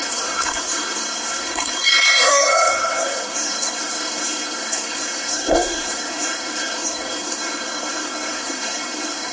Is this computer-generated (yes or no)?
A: yes